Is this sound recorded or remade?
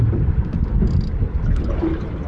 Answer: recorded